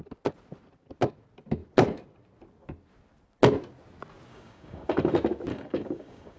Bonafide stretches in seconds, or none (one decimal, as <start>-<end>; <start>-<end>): 0.0-4.3; 5.1-5.5